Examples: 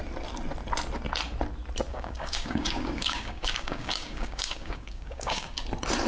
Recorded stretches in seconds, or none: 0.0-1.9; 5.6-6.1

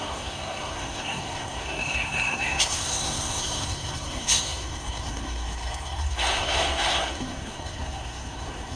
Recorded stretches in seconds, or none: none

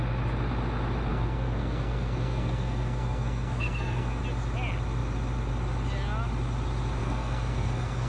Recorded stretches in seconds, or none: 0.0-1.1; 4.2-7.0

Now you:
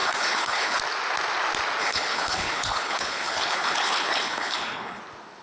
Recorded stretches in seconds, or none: 0.8-1.8; 5.0-5.4

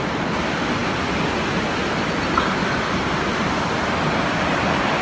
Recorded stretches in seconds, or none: 0.0-5.0

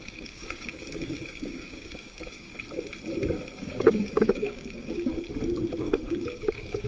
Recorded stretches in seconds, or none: 2.5-3.6; 5.1-5.8